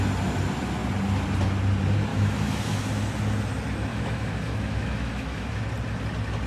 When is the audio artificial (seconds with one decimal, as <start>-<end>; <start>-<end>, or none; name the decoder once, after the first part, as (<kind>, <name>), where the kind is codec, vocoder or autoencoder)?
2.1-2.8 (autoencoder, DAC-VAE); 3.9-5.6